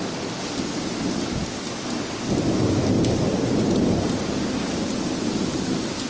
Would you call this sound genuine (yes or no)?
yes